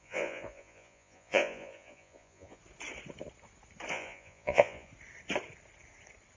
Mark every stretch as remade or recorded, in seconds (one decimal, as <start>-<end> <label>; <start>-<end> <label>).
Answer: 0.0-2.6 remade; 2.6-3.9 recorded; 3.9-4.9 remade; 4.9-6.4 recorded

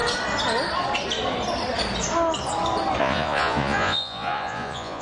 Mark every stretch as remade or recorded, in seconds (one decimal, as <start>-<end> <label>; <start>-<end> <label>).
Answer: 0.0-3.0 recorded; 3.0-5.0 remade

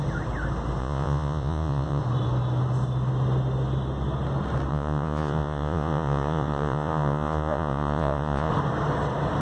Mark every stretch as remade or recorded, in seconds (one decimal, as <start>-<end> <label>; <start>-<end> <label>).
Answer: 0.0-0.8 recorded; 0.8-2.0 remade; 2.0-4.7 recorded; 4.7-8.5 remade; 8.5-9.4 recorded